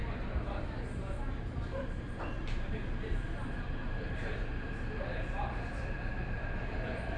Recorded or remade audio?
remade